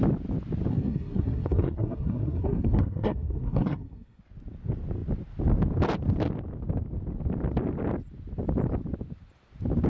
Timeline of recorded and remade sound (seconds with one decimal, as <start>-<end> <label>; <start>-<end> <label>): 0.0-0.7 recorded; 0.7-4.2 remade; 4.2-9.9 recorded